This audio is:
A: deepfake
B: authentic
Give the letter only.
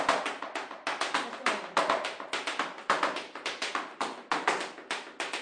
B